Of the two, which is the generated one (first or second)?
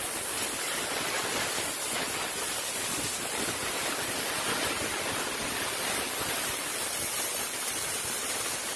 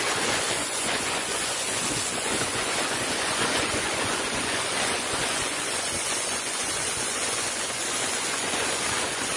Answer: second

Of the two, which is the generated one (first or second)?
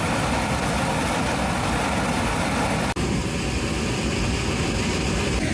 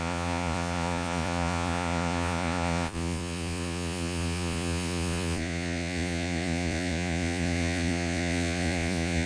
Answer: second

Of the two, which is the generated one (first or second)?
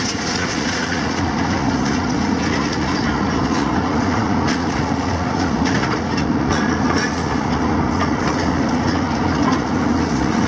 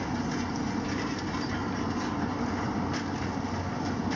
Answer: first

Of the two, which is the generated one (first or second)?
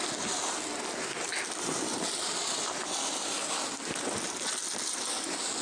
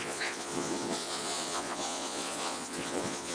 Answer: second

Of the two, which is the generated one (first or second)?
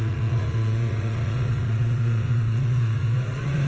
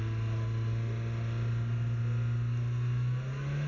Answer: first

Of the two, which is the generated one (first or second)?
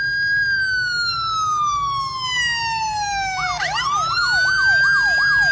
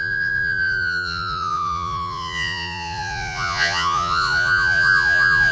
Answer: second